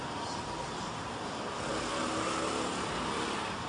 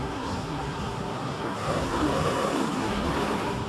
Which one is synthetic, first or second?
second